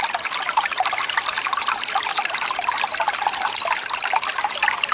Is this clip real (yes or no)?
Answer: yes